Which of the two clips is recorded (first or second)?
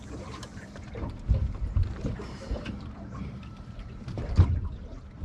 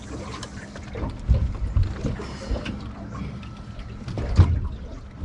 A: second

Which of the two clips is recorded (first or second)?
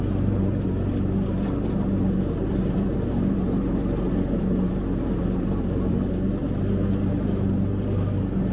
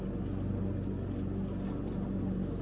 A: second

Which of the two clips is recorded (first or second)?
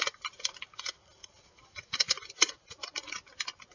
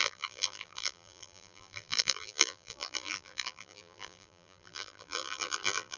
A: first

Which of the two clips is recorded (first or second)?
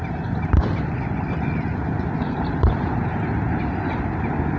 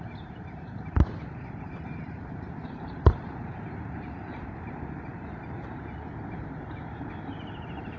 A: first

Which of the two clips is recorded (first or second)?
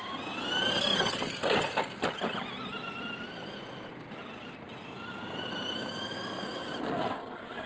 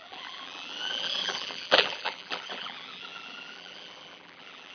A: first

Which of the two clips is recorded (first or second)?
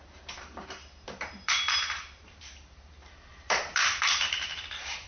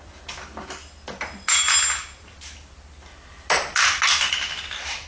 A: second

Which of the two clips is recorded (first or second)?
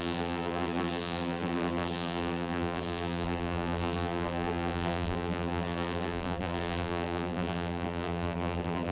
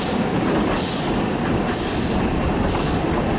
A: second